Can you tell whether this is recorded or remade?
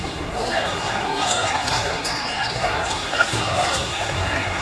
remade